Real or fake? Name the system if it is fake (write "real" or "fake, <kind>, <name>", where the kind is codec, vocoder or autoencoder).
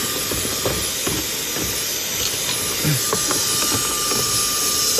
real